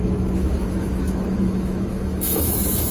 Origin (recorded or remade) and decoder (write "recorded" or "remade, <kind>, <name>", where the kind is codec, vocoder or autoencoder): remade, autoencoder, DAC-VAE